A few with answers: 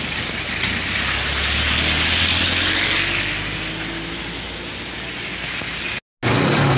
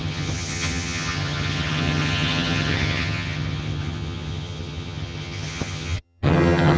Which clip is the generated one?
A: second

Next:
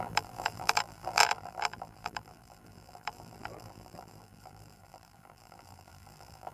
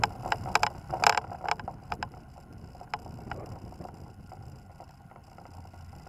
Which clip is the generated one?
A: first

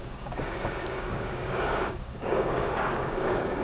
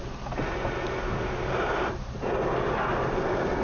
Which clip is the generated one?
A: first